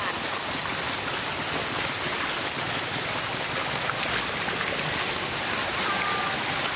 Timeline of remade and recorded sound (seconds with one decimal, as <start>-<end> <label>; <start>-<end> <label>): 0.0-6.8 recorded